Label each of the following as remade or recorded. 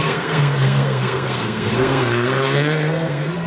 remade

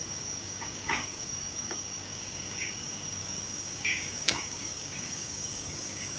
remade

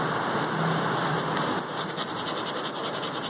recorded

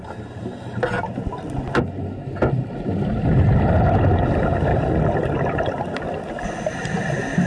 recorded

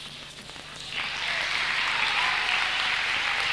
recorded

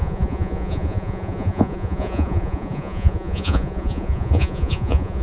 remade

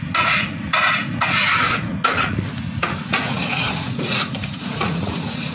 remade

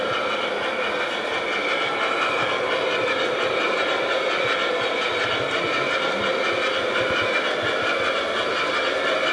recorded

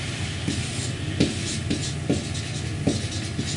recorded